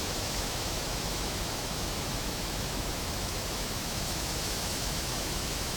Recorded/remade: remade